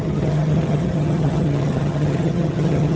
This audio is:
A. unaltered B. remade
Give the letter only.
B